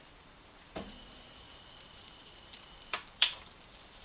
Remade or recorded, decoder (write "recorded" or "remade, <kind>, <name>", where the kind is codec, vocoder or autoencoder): remade, vocoder, BigVGAN v2